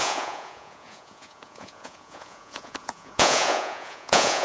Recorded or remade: remade